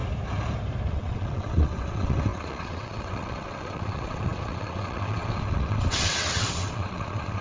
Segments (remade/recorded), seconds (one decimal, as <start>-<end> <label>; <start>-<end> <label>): 0.0-0.9 recorded; 0.9-7.4 remade